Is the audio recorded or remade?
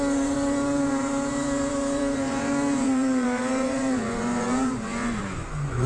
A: remade